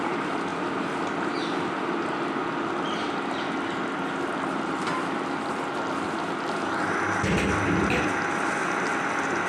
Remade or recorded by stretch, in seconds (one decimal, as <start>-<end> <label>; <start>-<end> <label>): 0.0-8.6 recorded; 8.6-9.1 remade; 9.1-9.5 recorded